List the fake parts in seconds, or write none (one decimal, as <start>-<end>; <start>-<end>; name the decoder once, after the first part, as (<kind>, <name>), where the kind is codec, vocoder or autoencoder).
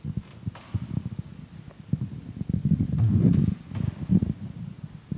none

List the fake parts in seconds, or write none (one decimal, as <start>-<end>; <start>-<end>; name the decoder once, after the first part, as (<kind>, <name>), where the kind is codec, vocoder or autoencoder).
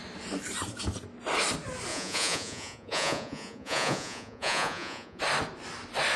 1.9-5.2 (vocoder, Vocos)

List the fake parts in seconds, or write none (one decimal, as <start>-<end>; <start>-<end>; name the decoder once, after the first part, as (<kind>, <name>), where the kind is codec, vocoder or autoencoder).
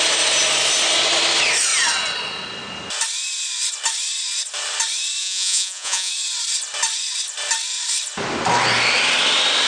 5.2-6.1 (vocoder, Vocos)